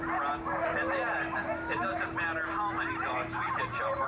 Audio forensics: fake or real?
real